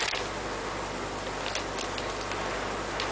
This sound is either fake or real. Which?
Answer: real